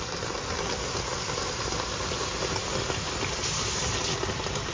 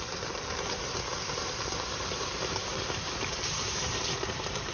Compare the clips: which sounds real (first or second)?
first